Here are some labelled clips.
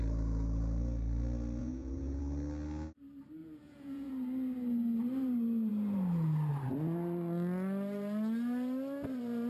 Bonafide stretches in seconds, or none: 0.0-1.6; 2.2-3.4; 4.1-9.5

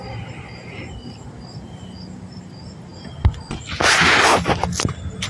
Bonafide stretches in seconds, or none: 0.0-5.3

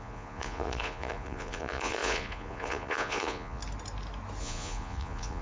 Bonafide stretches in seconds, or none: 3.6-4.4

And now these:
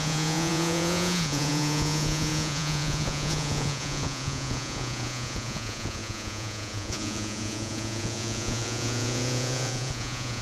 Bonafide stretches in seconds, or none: none